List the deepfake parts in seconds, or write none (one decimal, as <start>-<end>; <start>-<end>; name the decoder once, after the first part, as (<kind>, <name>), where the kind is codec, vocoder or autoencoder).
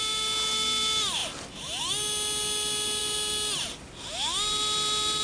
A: none